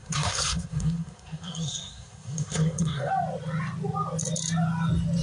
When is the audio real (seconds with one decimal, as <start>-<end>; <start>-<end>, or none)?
3.1-5.2